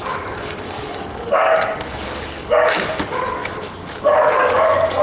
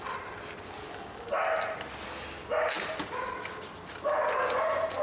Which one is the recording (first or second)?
second